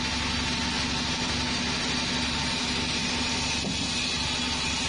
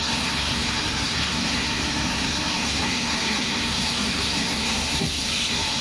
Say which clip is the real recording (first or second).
first